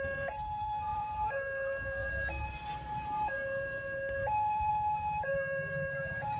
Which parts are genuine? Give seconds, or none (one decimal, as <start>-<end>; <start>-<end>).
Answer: none